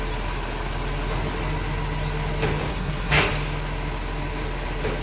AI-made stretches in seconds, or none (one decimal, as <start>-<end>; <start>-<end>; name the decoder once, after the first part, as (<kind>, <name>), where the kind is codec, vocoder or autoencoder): 2.7-3.3 (codec, SNAC)